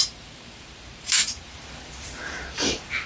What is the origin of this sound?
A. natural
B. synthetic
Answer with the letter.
B